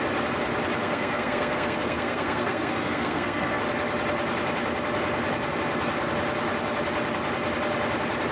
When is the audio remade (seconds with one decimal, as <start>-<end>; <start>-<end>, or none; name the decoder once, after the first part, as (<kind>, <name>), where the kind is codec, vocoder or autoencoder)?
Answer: 0.8-3.6 (codec, SNAC)